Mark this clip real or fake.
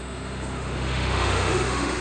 fake